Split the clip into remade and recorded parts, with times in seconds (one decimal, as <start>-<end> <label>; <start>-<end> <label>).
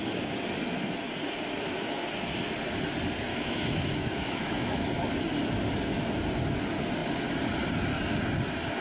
0.0-3.3 recorded; 3.3-5.1 remade; 5.1-8.8 recorded